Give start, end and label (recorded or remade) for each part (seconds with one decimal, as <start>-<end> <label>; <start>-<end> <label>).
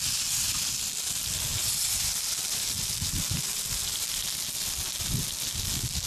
0.0-6.1 recorded